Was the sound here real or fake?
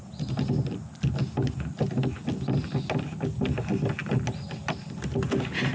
real